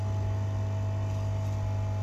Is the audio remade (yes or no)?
no